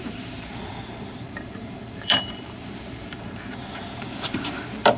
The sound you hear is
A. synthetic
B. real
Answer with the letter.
A